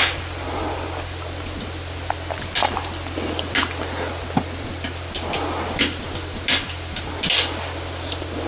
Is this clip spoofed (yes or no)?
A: no